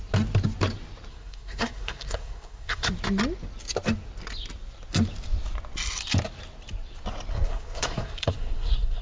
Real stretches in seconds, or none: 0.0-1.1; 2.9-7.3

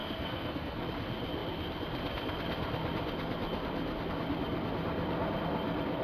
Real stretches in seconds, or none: 0.8-6.0

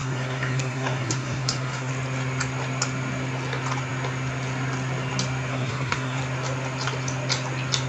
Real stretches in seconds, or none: 1.9-5.5; 6.2-7.9